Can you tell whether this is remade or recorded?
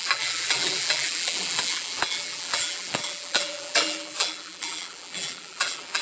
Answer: remade